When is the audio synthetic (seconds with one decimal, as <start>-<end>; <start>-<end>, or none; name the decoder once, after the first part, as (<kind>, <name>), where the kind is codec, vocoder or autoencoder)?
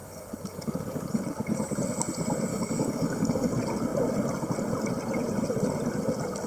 0.0-1.2 (codec, DAC); 2.5-3.5